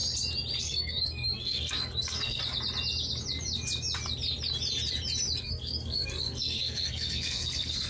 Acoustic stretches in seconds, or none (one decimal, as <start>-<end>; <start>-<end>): 0.0-0.6; 2.4-5.4